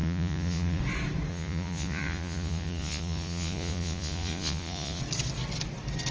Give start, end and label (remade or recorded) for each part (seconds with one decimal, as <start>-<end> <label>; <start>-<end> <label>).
0.0-0.8 remade; 0.8-1.3 recorded; 1.3-5.0 remade; 5.0-6.1 recorded